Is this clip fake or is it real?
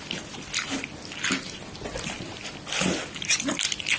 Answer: real